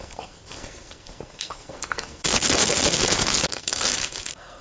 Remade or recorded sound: remade